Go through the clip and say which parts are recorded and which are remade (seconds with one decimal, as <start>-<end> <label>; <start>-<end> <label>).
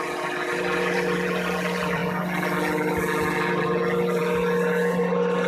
0.0-2.0 remade; 2.0-3.5 recorded; 3.5-4.2 remade; 4.2-5.5 recorded